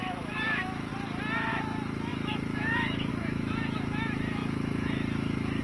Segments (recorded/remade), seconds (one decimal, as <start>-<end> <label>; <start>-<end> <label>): 0.0-0.9 remade; 0.9-1.5 recorded; 1.5-5.6 remade

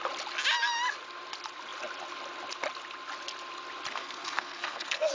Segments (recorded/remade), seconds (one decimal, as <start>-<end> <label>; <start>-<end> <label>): 0.0-3.9 recorded; 3.9-5.1 remade

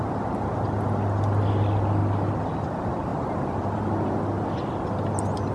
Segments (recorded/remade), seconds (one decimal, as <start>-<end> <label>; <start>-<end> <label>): 0.0-3.1 recorded; 3.1-3.8 remade; 3.8-5.5 recorded

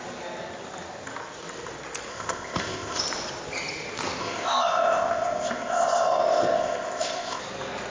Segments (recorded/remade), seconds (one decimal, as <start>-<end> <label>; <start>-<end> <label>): 0.0-2.1 recorded; 2.1-3.0 remade; 3.0-4.2 recorded; 4.2-7.4 remade; 7.4-7.9 recorded

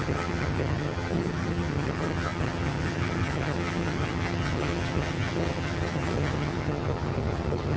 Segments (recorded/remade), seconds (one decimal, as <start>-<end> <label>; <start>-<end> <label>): 0.0-7.8 remade